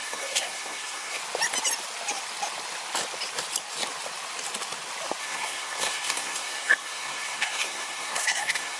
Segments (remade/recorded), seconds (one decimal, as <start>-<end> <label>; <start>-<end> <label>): 0.0-1.2 remade; 1.2-5.2 recorded; 5.2-8.8 remade